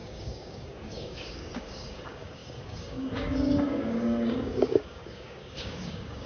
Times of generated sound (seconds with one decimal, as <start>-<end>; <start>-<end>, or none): 0.0-6.3